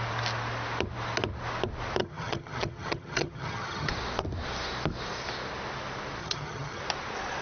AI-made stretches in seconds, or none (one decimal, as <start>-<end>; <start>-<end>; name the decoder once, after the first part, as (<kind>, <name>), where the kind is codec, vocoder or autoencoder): 2.0-3.9 (vocoder, HiFi-GAN); 6.2-6.8